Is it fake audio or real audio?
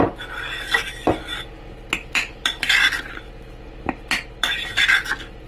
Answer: real